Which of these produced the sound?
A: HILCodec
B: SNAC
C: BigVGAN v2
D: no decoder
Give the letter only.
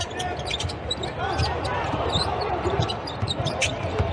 C